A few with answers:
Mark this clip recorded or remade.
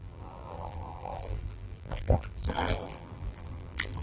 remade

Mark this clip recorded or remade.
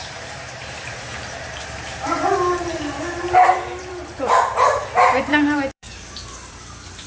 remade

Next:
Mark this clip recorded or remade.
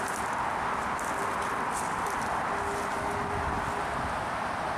recorded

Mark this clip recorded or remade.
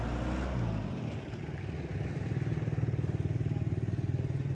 recorded